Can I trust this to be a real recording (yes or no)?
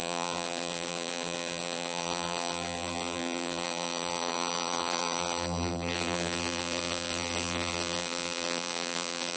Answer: no